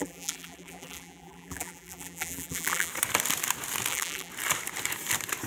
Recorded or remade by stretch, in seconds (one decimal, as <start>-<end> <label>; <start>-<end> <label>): 0.0-2.9 remade; 2.9-3.9 recorded; 3.9-4.3 remade; 4.3-5.5 recorded

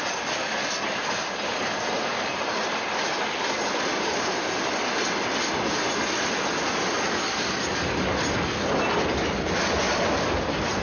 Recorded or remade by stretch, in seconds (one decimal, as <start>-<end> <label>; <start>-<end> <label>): 0.0-10.8 recorded

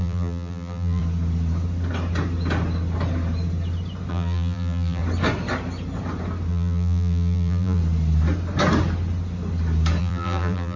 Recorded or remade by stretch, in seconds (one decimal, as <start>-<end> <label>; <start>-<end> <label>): 0.0-1.0 remade; 1.0-4.1 recorded; 4.1-5.0 remade; 5.0-6.5 recorded; 6.5-7.8 remade; 7.8-10.0 recorded; 10.0-10.8 remade

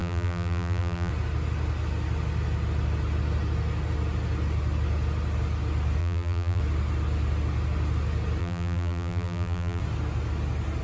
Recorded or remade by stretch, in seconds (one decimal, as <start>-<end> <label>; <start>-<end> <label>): 0.0-1.1 remade; 1.1-6.0 recorded; 6.0-6.6 remade; 6.6-8.4 recorded; 8.4-9.8 remade; 9.8-10.8 recorded

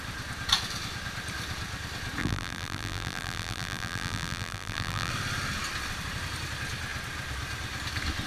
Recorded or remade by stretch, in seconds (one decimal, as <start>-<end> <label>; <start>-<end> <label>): 0.0-2.2 recorded; 2.2-5.1 remade; 5.1-8.3 recorded